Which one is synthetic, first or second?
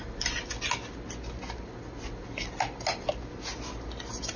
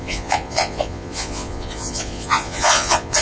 second